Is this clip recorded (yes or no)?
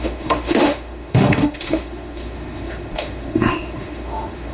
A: no